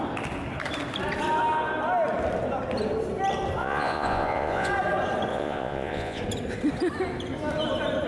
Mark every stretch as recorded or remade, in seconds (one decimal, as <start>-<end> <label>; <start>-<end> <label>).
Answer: 0.0-3.6 recorded; 3.6-4.7 remade; 4.7-5.3 recorded; 5.3-6.2 remade; 6.2-8.1 recorded